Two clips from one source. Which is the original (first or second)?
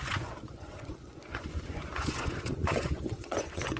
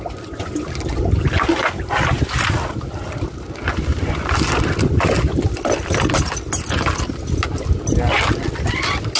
second